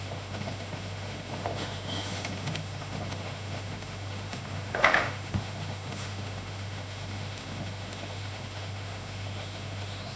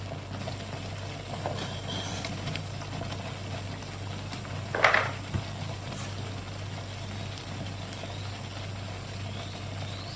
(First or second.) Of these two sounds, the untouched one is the second